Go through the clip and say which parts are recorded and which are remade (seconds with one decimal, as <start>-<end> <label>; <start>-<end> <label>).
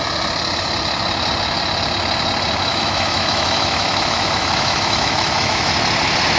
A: 0.0-2.7 recorded; 2.7-5.7 remade; 5.7-6.4 recorded